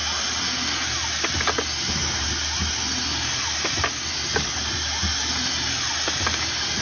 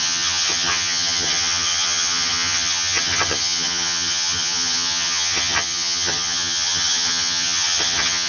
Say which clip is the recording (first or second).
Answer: first